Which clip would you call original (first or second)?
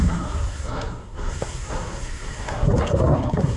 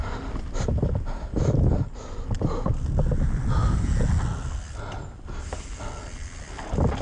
second